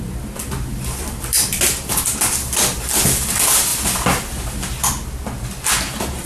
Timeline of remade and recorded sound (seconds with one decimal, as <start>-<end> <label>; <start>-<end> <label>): 0.0-0.7 recorded; 0.7-2.0 remade; 2.0-6.3 recorded